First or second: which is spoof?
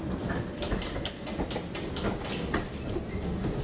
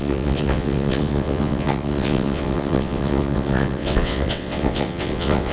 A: second